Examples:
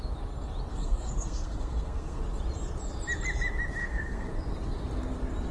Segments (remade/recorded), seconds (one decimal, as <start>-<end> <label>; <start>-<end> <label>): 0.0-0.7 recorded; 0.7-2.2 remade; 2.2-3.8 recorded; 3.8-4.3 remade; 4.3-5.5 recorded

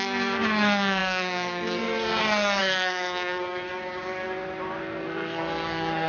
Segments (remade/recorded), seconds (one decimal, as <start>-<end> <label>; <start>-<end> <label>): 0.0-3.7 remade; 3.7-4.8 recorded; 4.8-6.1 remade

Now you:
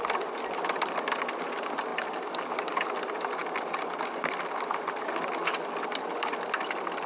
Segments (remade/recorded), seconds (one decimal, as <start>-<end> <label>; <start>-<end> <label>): 0.0-7.1 recorded

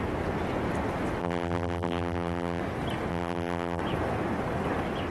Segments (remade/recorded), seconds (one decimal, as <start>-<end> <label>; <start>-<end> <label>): 0.0-1.2 recorded; 1.2-2.6 remade; 2.6-3.1 recorded; 3.1-3.8 remade; 3.8-5.1 recorded

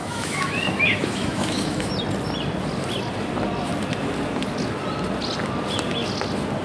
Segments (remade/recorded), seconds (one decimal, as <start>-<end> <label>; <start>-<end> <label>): 0.0-1.9 remade; 1.9-6.6 recorded

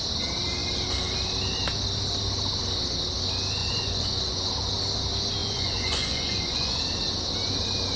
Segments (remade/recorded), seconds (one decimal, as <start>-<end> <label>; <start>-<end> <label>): 0.0-3.6 recorded; 3.6-4.5 remade; 4.5-5.4 recorded; 5.4-6.8 remade; 6.8-8.0 recorded

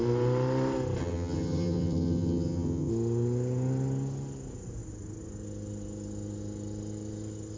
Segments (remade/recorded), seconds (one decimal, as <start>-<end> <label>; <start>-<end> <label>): 0.0-1.0 recorded; 1.0-2.9 remade; 2.9-7.6 recorded